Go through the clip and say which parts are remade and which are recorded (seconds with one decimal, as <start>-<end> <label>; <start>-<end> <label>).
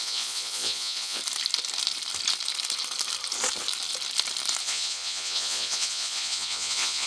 0.0-1.2 remade; 1.2-4.6 recorded; 4.6-7.1 remade